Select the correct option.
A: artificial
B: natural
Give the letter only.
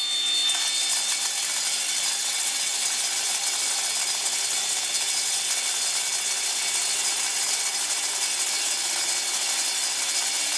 B